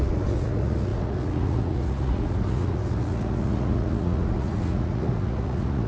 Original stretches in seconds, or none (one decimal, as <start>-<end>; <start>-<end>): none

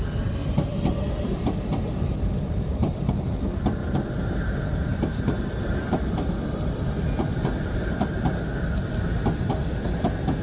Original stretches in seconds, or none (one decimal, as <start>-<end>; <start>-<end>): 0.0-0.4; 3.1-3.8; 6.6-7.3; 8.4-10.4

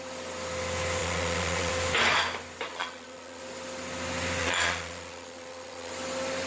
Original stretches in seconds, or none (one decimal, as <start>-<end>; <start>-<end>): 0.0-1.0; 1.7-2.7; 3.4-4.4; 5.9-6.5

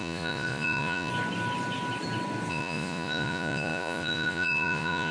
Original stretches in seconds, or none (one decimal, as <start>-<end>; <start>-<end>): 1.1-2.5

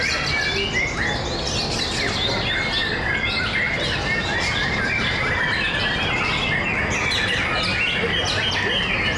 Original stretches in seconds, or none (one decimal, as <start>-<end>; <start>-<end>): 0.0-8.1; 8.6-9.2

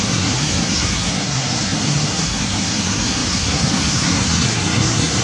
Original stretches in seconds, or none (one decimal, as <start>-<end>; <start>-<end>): none

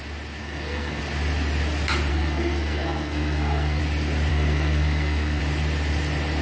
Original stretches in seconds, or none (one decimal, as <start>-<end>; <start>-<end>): 0.0-0.4; 1.0-2.1; 3.8-4.3; 5.4-6.4